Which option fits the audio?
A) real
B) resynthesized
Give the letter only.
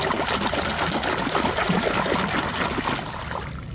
A